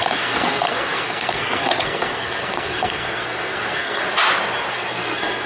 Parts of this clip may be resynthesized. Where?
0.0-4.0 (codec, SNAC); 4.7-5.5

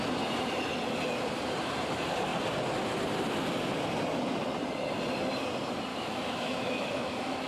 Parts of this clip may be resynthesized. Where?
5.9-7.5 (autoencoder, DAC-VAE)

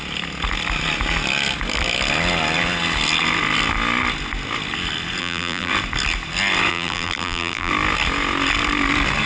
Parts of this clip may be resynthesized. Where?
5.2-5.7 (vocoder, BigVGAN v2); 6.7-7.7

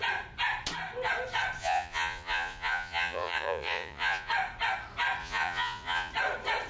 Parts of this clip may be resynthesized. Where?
1.6-4.3 (vocoder, Vocos); 5.2-6.1